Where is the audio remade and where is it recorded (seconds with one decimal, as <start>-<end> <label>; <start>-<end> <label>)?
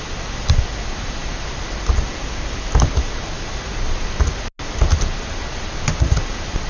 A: 0.0-6.7 recorded